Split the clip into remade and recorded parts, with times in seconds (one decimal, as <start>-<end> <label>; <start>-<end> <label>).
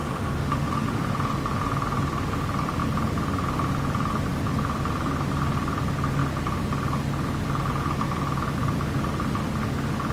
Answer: 0.0-1.0 remade; 1.0-10.1 recorded